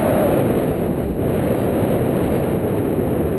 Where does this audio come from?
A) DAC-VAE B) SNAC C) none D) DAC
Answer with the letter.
C